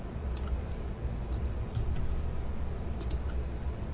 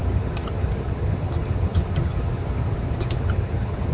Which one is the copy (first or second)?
second